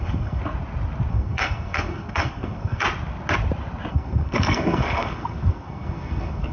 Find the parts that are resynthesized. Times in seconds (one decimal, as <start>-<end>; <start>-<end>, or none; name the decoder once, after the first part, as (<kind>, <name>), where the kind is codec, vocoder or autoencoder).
0.0-0.4 (codec, SNAC); 1.1-2.8; 3.9-6.5